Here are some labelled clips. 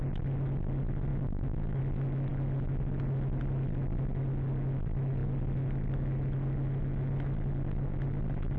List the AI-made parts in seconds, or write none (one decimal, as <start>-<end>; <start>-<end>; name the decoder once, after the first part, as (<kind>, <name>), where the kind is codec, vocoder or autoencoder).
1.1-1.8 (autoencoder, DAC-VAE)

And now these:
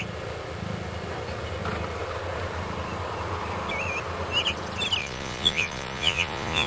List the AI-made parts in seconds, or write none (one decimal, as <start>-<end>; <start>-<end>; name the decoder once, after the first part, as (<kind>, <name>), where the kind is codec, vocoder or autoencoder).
5.0-6.7 (vocoder, Vocos)

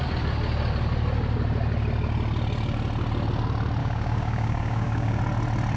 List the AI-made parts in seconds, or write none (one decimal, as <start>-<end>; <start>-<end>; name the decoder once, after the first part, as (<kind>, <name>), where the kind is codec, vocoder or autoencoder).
3.8-5.2 (codec, DAC)

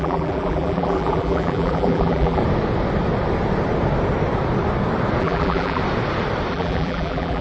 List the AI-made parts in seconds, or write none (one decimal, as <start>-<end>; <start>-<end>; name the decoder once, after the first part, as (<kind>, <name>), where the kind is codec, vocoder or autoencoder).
0.0-2.4 (vocoder, BigVGAN v2); 5.2-5.8; 6.5-7.4

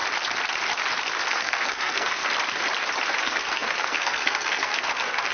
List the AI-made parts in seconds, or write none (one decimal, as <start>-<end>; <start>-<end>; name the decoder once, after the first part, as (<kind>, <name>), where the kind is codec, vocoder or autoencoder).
1.3-2.2 (codec, SNAC); 3.2-5.3